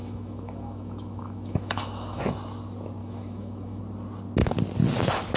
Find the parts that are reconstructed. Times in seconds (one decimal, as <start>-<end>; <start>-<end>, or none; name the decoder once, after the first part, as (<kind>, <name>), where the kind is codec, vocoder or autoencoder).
0.0-2.2 (autoencoder, DAC-VAE); 3.0-3.8